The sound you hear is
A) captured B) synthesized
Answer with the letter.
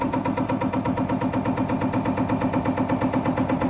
A